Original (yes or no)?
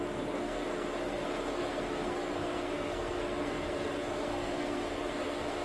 no